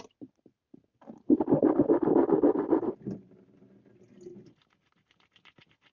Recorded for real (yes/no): yes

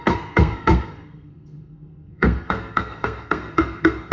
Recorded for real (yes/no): no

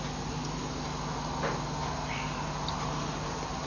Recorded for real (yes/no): yes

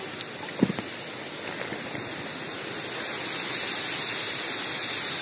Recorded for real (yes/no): yes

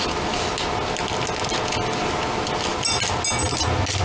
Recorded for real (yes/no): yes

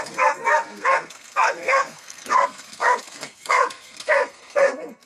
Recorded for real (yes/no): no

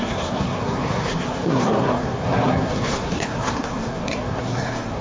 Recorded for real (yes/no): no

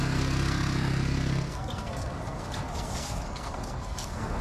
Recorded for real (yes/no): no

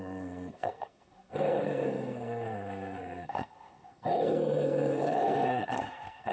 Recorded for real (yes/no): no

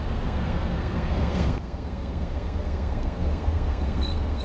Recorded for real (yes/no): no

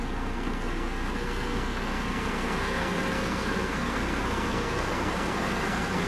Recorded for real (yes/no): no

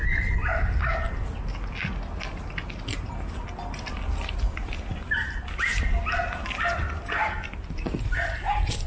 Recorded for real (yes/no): yes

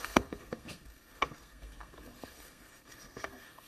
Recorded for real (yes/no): no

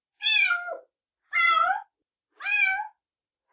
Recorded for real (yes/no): yes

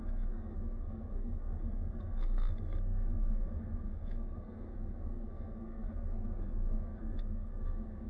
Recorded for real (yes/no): no